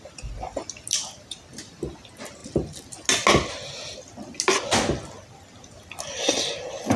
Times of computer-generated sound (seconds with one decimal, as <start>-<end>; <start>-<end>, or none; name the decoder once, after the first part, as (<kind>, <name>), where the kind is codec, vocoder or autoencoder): none